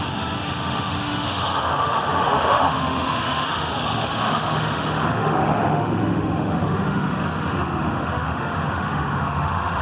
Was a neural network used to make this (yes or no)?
yes